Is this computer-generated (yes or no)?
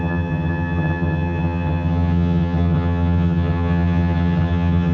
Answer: yes